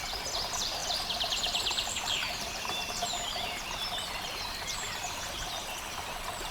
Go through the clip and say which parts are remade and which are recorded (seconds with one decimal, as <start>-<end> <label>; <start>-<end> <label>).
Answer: 0.0-6.5 remade